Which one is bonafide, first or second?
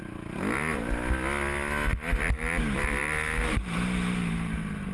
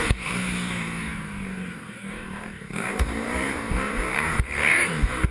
first